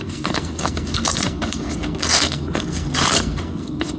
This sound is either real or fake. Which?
fake